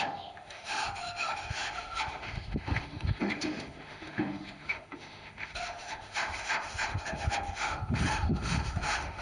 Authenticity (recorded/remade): remade